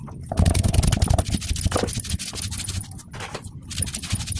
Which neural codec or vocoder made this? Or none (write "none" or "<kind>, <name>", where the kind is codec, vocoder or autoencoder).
none